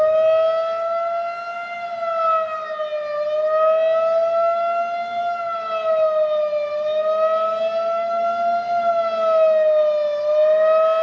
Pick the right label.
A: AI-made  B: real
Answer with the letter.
B